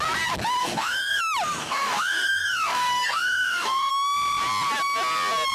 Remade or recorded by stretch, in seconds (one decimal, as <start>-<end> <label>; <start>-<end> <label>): 0.0-0.6 recorded; 0.6-1.2 remade; 1.2-1.6 recorded; 1.6-3.9 remade; 3.9-5.5 recorded